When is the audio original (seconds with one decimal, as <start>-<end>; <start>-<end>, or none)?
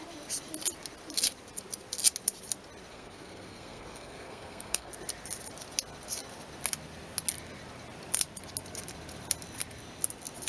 0.0-2.9; 4.9-10.5